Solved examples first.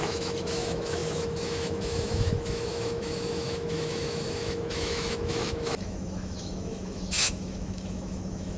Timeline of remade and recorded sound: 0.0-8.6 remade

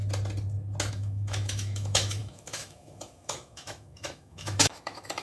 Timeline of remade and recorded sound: 0.0-0.9 recorded; 0.9-5.2 remade